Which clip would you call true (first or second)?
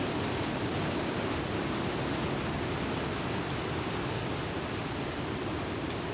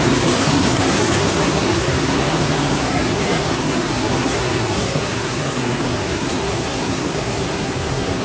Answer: first